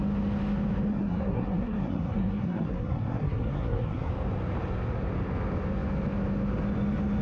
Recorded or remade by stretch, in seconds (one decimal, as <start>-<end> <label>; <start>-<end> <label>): 0.0-0.9 recorded; 0.9-4.1 remade; 4.1-7.2 recorded